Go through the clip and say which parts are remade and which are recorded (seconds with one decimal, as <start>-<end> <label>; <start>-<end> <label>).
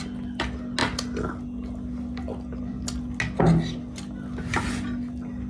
0.0-5.5 recorded